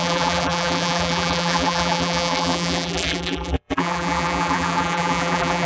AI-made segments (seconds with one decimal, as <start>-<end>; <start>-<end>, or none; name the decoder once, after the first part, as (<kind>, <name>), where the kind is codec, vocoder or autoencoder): 0.0-5.7 (vocoder, BigVGAN v2)